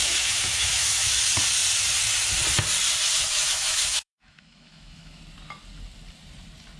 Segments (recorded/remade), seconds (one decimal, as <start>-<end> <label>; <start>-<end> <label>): 0.0-1.2 remade; 1.2-3.2 recorded; 3.2-5.2 remade; 5.2-6.8 recorded